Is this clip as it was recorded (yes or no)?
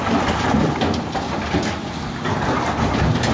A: yes